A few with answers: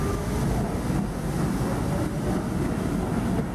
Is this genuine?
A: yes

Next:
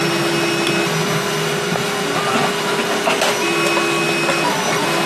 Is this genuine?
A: yes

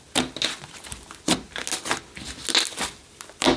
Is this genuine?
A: yes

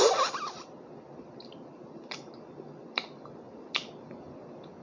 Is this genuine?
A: yes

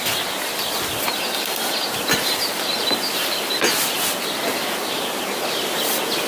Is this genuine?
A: yes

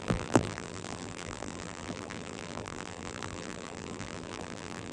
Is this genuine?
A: no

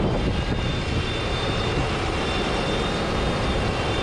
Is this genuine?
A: no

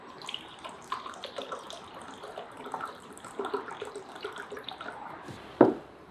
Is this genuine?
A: no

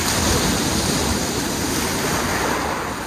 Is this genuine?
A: yes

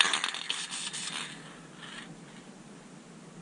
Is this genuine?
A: yes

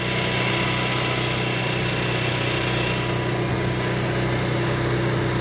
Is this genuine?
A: yes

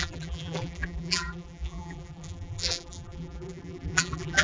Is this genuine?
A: no